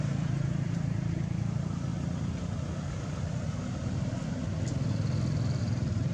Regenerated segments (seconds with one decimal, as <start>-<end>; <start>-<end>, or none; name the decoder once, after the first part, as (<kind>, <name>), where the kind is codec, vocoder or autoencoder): 0.0-1.9 (vocoder, BigVGAN v2); 5.6-6.1